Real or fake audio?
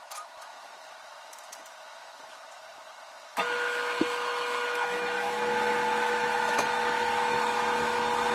fake